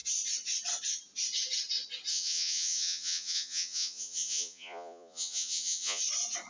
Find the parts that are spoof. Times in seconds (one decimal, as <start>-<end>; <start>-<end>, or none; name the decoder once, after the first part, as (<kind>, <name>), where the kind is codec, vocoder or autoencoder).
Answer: 2.1-6.0 (vocoder, Vocos)